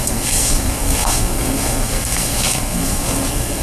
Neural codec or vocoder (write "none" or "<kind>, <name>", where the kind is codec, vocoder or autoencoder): codec, SNAC